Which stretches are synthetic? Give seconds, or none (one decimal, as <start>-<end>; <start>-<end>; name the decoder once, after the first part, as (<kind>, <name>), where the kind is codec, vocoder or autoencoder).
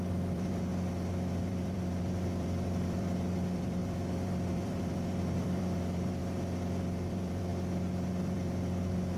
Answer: 0.0-0.7 (vocoder, BigVGAN v2); 1.4-6.2; 7.1-7.5; 8.1-9.2